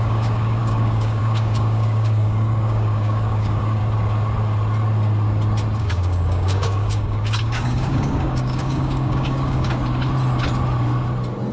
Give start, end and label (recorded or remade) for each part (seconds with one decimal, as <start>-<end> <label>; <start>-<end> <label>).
0.0-3.8 remade; 3.8-5.8 recorded; 5.8-9.8 remade; 9.8-11.5 recorded